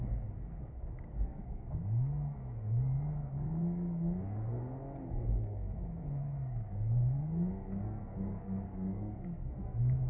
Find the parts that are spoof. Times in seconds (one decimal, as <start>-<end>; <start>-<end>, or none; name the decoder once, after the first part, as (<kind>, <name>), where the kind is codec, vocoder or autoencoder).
0.0-0.6 (codec, SNAC); 1.1-4.6; 5.1-10.1